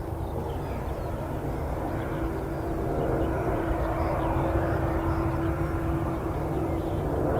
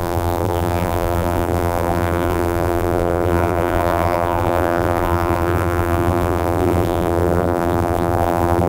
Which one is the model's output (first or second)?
second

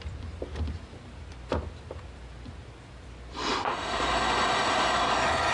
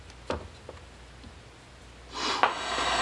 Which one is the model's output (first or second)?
first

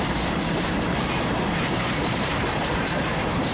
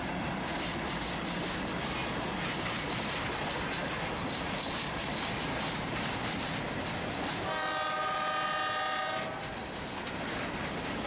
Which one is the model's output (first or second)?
first